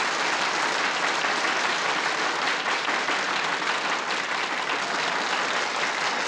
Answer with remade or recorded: recorded